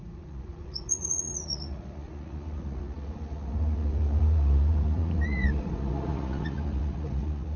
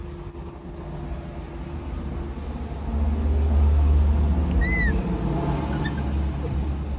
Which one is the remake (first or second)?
first